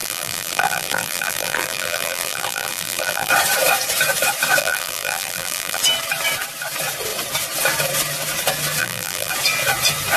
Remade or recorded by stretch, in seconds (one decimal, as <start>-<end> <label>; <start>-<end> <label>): 0.0-3.3 remade; 3.3-4.6 recorded; 4.6-5.8 remade; 5.8-8.8 recorded; 8.8-9.3 remade; 9.3-10.2 recorded

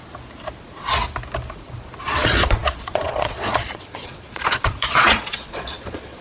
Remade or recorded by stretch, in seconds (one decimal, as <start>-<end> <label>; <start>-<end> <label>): 0.0-2.0 recorded; 2.0-6.2 remade